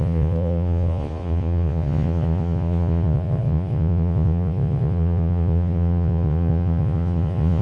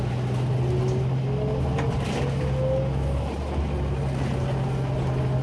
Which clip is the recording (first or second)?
second